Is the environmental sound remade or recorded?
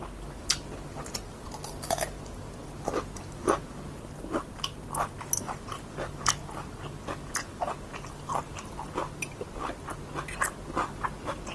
recorded